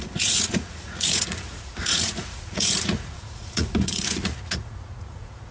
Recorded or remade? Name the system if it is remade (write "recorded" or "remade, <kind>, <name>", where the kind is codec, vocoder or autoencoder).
remade, vocoder, Vocos